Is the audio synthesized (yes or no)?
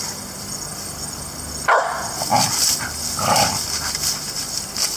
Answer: no